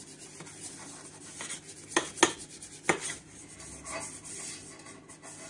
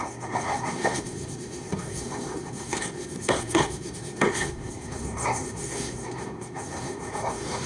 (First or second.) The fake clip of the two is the second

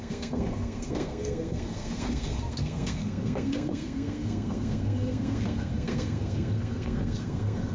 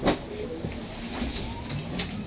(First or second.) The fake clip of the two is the first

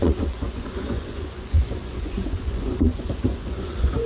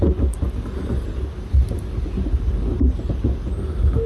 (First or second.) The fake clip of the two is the first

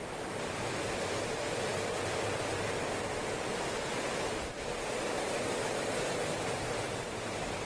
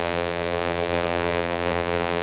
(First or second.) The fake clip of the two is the second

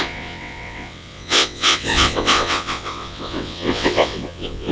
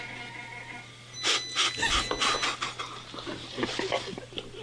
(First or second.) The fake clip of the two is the first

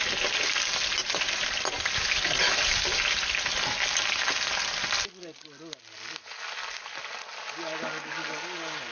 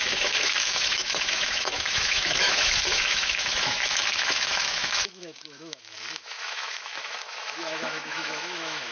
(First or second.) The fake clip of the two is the second